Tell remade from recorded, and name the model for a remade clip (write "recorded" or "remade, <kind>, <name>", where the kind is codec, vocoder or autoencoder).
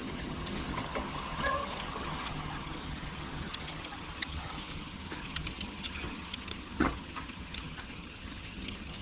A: remade, vocoder, HiFi-GAN